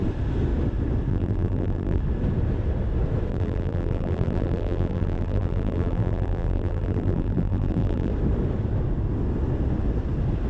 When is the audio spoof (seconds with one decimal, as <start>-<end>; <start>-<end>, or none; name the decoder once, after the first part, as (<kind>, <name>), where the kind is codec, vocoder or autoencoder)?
1.1-2.0 (vocoder, BigVGAN v2); 3.3-8.1